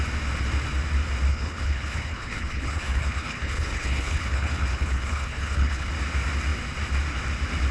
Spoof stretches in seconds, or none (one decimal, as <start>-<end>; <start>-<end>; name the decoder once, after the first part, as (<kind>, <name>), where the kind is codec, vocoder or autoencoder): 1.3-5.9 (codec, HILCodec)